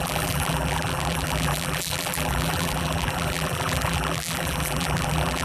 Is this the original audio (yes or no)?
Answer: no